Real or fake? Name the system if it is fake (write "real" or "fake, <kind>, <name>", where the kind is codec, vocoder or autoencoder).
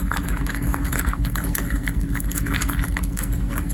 fake, codec, SNAC